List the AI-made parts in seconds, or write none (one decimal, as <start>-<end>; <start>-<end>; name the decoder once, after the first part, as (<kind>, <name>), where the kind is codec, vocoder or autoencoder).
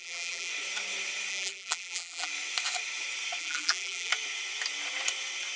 0.0-0.5 (vocoder, BigVGAN v2); 1.3-2.3; 3.4-4.1